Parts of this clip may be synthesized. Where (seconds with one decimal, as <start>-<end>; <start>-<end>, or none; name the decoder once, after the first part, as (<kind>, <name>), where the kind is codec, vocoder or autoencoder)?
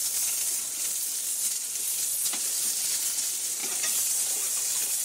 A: 3.6-4.3 (vocoder, BigVGAN v2)